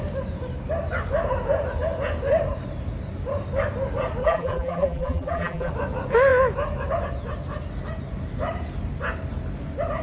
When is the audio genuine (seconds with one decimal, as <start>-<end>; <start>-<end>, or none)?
0.0-4.2; 5.7-10.0